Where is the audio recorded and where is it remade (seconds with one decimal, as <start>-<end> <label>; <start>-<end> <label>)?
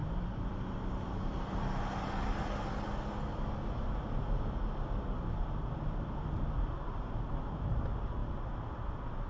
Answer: 0.0-9.3 recorded